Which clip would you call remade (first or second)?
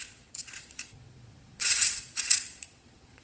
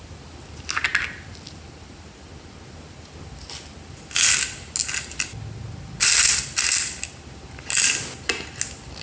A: first